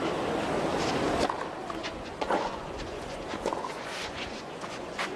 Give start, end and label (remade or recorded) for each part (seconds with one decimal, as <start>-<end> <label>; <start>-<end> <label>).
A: 0.0-1.8 recorded; 1.8-5.2 remade